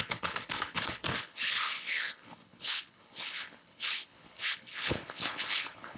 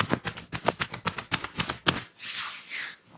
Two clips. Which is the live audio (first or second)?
second